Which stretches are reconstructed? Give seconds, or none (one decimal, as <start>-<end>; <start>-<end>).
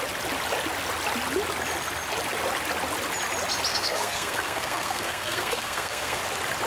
3.7-6.2